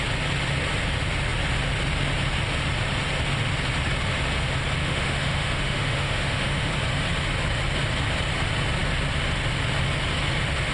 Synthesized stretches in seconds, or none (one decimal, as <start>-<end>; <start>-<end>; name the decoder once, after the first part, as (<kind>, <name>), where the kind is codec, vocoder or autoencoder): 4.8-6.7 (autoencoder, DAC-VAE)